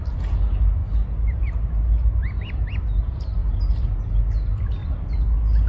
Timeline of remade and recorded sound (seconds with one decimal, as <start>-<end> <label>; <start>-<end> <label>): 0.0-5.7 recorded